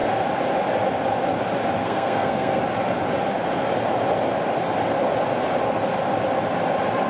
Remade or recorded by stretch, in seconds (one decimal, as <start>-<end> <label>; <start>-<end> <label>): 0.0-1.8 recorded; 1.8-2.6 remade; 2.6-7.1 recorded